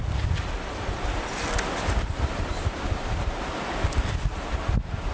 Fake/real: real